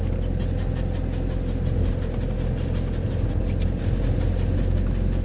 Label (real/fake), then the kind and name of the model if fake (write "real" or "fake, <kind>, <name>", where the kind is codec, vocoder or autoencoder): real